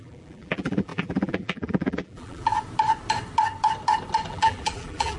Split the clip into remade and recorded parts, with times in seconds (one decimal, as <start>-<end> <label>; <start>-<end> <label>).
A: 0.0-2.5 remade; 2.5-4.3 recorded; 4.3-5.2 remade